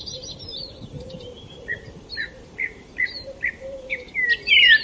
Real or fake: fake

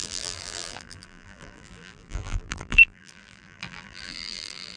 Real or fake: fake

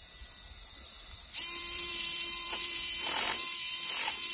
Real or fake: fake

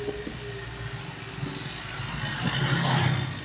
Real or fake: real